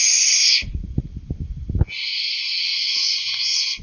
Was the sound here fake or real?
real